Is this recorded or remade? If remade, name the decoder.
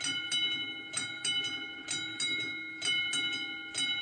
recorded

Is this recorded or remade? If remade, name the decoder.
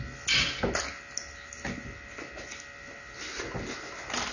recorded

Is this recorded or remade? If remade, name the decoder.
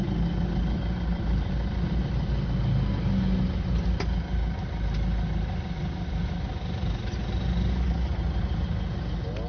recorded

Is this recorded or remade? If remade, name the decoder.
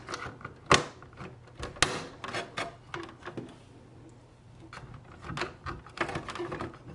recorded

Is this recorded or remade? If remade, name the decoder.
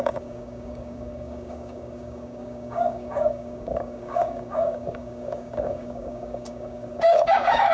remade, codec, DAC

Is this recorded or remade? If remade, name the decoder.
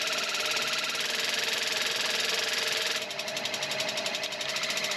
recorded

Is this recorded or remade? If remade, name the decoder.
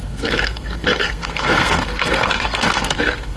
remade, codec, SNAC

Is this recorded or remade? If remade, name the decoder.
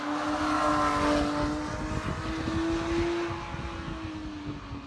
recorded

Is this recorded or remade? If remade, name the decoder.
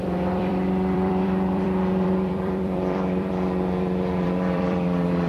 remade, vocoder, BigVGAN v2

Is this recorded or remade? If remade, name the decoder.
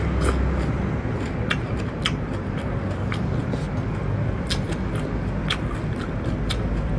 recorded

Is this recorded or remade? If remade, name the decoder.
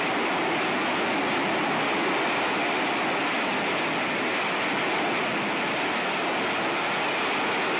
recorded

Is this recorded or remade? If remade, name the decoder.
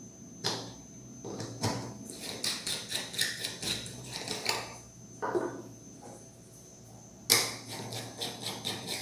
recorded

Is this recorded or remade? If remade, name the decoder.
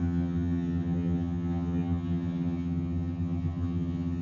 remade, vocoder, HiFi-GAN